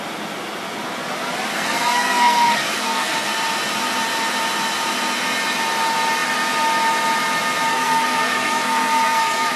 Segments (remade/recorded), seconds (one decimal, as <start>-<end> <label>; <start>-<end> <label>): 0.0-1.5 recorded; 1.5-3.3 remade; 3.3-7.7 recorded; 7.7-9.6 remade